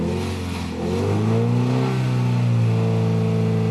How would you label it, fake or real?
real